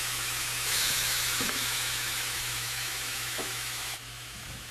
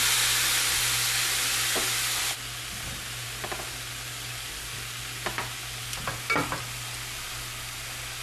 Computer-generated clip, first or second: first